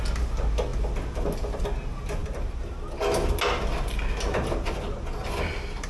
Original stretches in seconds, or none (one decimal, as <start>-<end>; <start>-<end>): 0.0-5.9